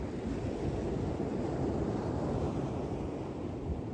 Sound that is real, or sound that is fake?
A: real